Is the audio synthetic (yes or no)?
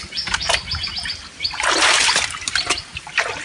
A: no